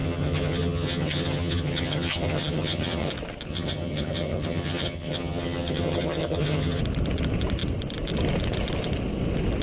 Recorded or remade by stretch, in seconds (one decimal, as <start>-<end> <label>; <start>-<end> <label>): 0.0-3.1 remade; 3.1-3.5 recorded; 3.5-6.8 remade; 6.8-9.6 recorded